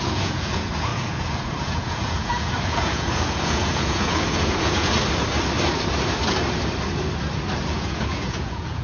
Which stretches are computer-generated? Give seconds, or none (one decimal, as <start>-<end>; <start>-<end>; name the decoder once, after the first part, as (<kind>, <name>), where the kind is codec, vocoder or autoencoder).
0.0-4.9 (vocoder, Vocos); 7.6-8.8